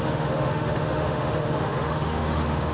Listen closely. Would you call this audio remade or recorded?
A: remade